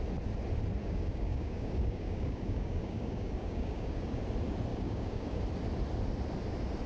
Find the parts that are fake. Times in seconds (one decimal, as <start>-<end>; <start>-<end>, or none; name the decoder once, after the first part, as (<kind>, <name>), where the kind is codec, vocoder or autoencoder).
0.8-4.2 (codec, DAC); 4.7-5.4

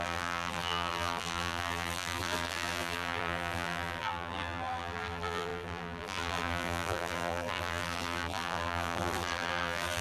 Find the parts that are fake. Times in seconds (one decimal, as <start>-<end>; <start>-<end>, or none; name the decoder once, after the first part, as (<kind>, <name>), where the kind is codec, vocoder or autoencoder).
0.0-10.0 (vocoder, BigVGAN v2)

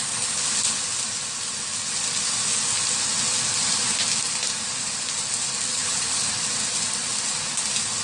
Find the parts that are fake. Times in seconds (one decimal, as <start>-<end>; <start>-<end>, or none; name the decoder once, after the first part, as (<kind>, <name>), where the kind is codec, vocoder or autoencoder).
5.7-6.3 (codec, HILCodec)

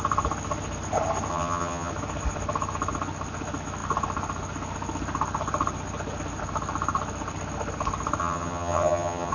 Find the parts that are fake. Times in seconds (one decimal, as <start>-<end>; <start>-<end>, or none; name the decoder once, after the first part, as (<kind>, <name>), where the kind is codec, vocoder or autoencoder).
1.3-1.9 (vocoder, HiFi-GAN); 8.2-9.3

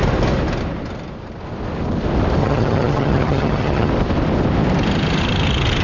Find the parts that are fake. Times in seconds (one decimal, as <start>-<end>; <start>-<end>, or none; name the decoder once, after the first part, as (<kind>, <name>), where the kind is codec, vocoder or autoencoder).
2.4-3.9 (vocoder, HiFi-GAN)